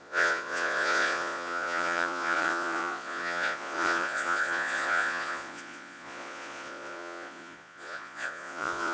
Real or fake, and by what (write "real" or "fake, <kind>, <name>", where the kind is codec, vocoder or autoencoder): fake, vocoder, Vocos